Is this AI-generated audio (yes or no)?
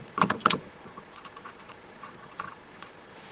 yes